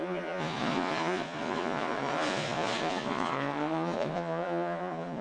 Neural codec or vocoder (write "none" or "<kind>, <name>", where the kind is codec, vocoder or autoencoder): vocoder, Vocos